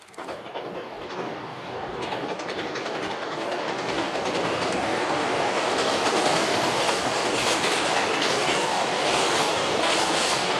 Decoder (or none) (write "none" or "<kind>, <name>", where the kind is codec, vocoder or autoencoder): codec, DAC